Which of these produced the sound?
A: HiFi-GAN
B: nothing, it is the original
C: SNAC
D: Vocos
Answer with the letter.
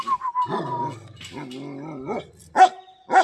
B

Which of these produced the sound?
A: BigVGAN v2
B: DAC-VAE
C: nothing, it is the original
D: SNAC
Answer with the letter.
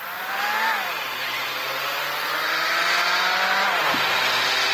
C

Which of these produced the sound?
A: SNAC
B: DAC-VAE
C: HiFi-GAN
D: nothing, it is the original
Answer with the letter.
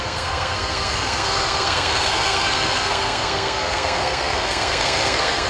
A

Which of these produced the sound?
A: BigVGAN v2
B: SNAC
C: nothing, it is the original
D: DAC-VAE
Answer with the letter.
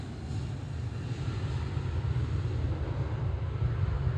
C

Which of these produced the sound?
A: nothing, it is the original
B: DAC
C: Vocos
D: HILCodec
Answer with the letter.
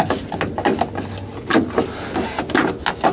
A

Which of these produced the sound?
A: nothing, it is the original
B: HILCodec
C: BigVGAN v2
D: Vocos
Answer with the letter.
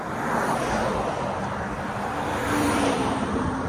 C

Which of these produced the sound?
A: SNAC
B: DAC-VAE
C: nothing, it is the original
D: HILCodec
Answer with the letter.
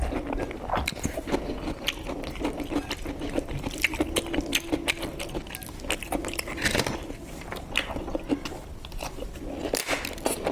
C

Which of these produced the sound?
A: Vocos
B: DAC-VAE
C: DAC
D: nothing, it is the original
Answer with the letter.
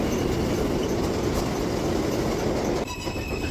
D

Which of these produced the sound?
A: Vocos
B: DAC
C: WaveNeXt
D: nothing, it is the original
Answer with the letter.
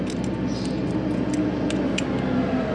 D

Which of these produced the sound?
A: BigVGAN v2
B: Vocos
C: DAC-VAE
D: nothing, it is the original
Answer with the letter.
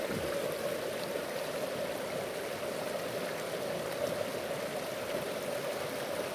D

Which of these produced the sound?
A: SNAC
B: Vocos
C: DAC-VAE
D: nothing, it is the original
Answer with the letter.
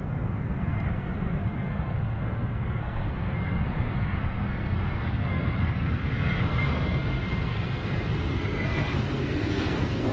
A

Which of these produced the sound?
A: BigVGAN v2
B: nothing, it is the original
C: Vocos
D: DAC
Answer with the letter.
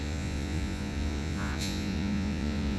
C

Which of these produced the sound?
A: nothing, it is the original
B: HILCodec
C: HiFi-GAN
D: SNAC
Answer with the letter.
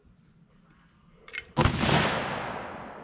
A